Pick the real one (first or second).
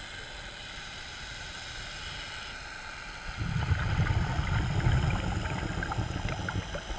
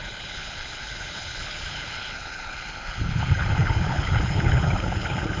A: first